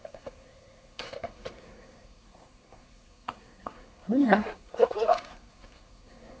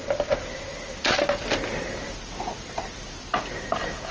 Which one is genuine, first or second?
second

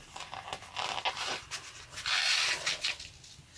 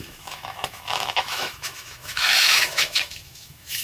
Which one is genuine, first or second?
first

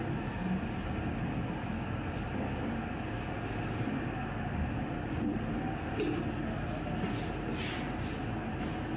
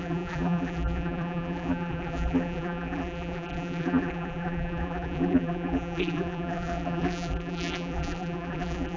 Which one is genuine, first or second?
first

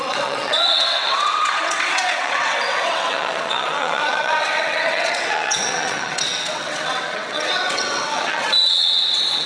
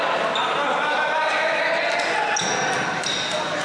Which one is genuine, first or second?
second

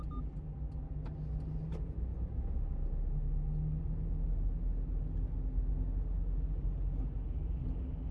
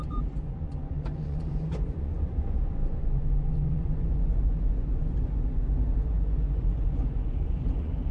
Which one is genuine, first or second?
first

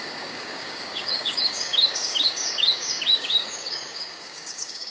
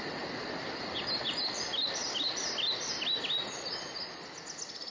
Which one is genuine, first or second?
second